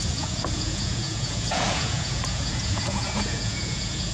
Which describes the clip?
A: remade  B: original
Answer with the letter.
A